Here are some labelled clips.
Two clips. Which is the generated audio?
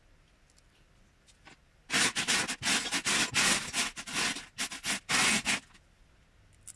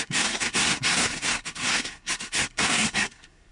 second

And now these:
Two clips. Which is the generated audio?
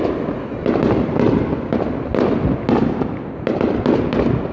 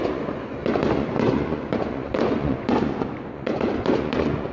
second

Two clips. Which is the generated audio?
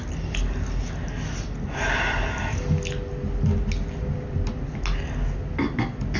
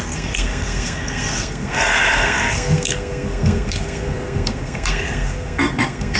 second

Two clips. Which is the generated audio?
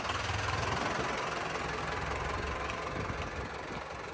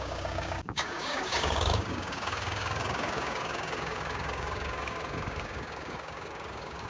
second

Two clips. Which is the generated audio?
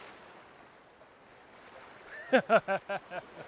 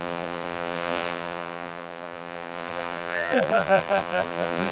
second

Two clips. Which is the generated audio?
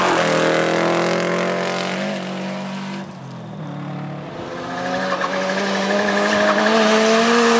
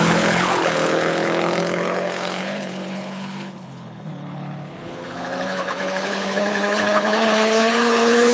second